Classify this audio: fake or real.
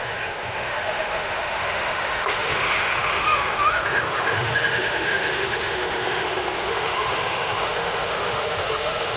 fake